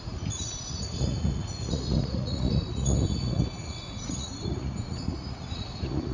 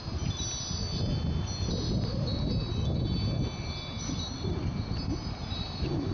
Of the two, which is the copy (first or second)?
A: first